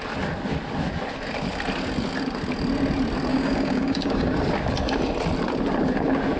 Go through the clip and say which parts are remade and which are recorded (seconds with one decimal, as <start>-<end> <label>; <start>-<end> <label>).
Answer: 0.0-3.3 recorded; 3.3-4.3 remade; 4.3-6.4 recorded